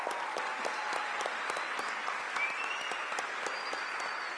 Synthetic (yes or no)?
no